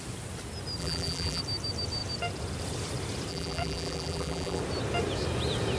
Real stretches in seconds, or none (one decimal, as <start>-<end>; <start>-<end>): 0.0-0.8; 1.4-3.3; 4.6-5.8